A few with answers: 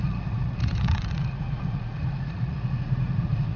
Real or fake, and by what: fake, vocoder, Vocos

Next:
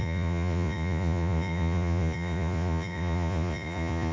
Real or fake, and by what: fake, vocoder, Vocos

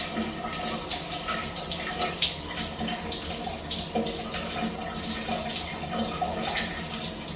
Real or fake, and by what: real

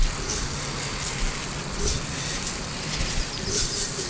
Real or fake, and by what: real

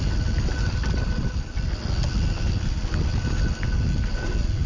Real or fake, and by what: real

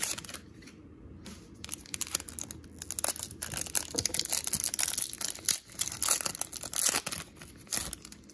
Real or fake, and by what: real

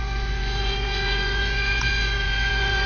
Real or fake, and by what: fake, vocoder, Vocos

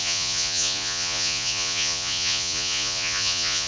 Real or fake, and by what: fake, vocoder, Vocos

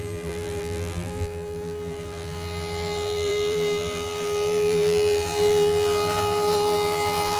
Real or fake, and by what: fake, vocoder, BigVGAN v2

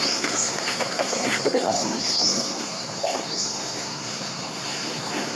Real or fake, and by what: fake, codec, SNAC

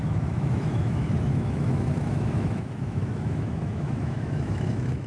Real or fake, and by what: fake, autoencoder, DAC-VAE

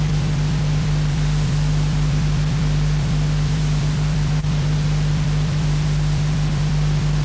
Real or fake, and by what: fake, vocoder, BigVGAN v2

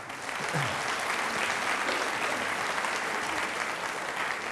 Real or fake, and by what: real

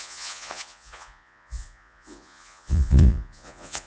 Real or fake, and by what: fake, vocoder, Vocos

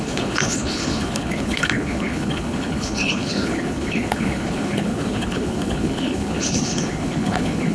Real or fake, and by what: fake, codec, HILCodec